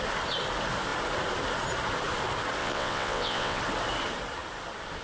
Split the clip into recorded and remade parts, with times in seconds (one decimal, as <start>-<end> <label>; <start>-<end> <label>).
0.0-2.6 recorded; 2.6-3.6 remade; 3.6-5.0 recorded